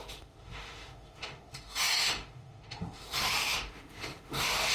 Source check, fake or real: fake